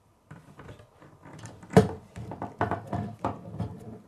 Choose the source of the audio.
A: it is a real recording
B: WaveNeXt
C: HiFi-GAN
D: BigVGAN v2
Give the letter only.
D